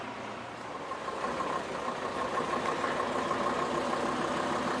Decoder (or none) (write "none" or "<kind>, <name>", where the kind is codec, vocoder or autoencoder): none